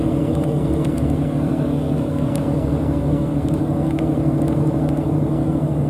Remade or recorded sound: remade